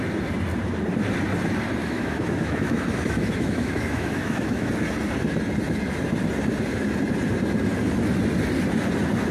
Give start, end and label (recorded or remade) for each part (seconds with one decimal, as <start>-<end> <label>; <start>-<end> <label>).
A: 0.0-1.8 recorded; 1.8-4.7 remade; 4.7-9.3 recorded